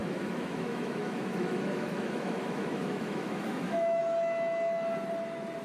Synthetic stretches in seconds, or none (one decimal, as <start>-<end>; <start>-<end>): 0.0-4.0